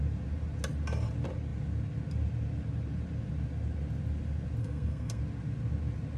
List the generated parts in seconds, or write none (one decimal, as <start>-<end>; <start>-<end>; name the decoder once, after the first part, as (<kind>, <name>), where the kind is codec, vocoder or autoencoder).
4.6-5.2 (codec, SNAC)